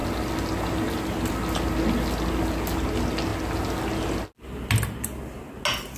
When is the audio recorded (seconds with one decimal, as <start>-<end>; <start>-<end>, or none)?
0.0-6.0